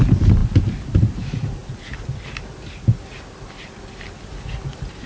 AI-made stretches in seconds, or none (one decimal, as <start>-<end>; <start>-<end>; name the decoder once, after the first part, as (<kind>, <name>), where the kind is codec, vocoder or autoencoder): none